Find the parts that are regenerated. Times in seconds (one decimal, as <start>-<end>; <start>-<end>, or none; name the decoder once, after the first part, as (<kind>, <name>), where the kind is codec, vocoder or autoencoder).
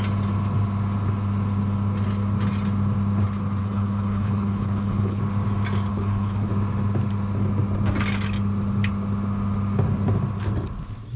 3.6-5.2 (codec, HILCodec); 5.9-6.5